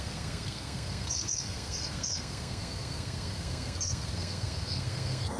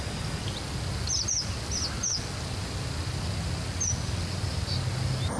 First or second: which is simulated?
first